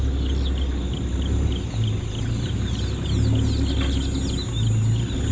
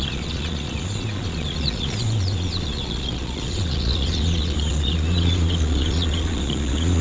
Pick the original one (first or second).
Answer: first